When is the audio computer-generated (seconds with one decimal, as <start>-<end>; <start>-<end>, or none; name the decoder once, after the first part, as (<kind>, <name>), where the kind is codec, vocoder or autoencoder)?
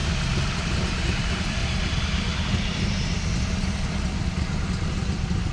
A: 0.6-1.6 (vocoder, BigVGAN v2); 4.9-5.5